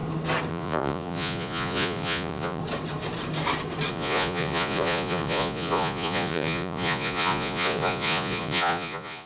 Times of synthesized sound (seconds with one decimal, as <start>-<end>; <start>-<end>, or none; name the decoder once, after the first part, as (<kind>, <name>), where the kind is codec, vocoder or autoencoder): 0.5-2.6 (vocoder, Vocos); 3.9-9.3